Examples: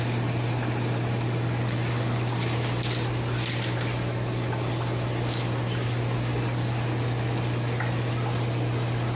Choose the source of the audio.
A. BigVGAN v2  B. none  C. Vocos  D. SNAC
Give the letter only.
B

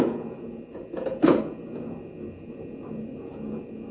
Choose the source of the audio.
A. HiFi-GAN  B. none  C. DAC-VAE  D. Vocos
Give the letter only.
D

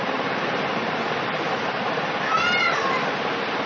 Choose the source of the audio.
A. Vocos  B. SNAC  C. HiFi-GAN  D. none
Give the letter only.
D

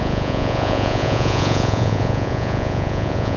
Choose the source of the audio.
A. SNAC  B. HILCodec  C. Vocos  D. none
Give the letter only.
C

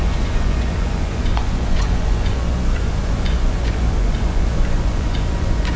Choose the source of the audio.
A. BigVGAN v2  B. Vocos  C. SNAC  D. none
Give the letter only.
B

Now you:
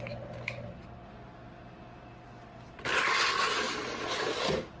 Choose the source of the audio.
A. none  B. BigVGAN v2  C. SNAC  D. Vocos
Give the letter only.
A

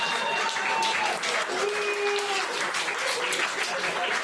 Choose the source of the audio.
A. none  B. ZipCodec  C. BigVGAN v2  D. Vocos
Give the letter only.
A